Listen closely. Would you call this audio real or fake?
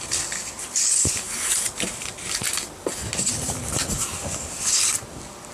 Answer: real